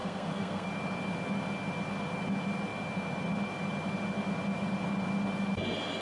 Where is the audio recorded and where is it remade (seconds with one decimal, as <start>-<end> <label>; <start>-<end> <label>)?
0.0-0.7 remade; 0.7-6.0 recorded